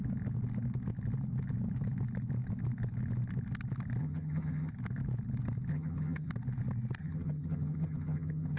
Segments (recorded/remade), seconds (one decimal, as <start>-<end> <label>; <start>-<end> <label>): 0.0-4.0 recorded; 4.0-4.7 remade; 4.7-5.7 recorded; 5.7-6.3 remade; 6.3-7.0 recorded; 7.0-8.6 remade